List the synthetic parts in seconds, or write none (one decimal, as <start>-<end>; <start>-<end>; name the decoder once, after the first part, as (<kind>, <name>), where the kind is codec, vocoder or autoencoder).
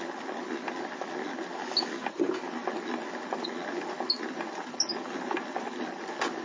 none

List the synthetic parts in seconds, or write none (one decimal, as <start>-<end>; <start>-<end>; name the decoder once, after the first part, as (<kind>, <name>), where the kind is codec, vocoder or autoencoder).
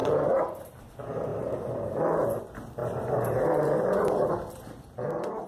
0.0-0.8 (vocoder, BigVGAN v2); 1.3-2.4; 2.8-4.3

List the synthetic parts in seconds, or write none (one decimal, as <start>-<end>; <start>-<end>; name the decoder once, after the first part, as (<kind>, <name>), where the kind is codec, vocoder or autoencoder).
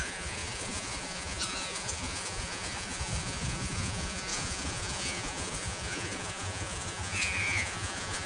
0.0-8.3 (vocoder, Vocos)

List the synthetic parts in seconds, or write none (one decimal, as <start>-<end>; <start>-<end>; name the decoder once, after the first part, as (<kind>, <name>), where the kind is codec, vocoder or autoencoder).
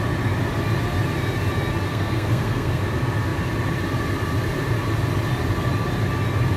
1.9-2.8 (codec, SNAC)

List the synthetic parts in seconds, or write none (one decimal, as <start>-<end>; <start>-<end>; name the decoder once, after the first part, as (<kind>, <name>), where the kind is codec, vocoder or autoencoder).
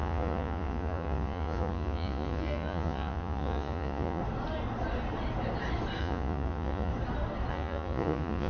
0.0-4.2 (vocoder, Vocos); 6.0-6.9; 7.5-8.5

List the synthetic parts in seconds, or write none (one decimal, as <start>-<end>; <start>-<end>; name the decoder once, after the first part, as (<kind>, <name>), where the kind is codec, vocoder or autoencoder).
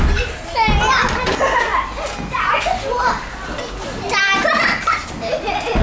none